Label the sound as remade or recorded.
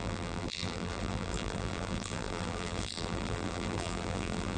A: remade